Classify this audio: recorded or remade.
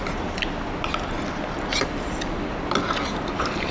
recorded